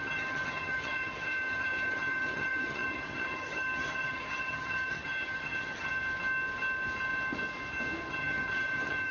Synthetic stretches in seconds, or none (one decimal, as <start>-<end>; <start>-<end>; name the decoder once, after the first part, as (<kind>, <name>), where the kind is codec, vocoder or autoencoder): 0.0-5.9 (vocoder, HiFi-GAN); 8.1-9.1